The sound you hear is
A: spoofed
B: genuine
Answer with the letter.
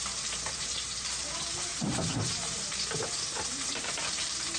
A